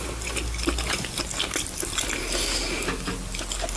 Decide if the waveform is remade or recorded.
recorded